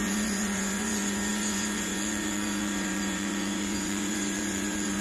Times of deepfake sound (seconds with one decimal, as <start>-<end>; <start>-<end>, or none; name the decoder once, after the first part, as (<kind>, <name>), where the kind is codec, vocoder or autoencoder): 0.0-5.0 (vocoder, Vocos)